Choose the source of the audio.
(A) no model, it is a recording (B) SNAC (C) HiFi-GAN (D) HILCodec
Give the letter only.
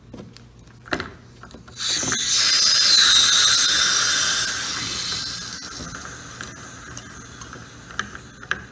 A